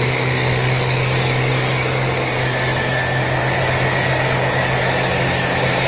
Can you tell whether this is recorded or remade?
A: remade